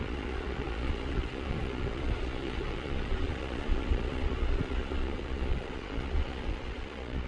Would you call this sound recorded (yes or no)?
no